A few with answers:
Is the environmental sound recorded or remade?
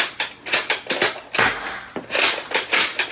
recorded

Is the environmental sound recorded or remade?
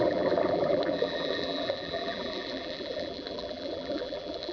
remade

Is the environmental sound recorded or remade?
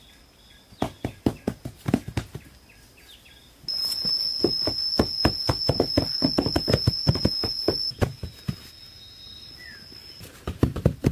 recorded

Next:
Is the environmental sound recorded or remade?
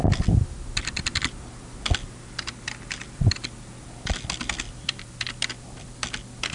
remade